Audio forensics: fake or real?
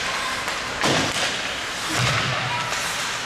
real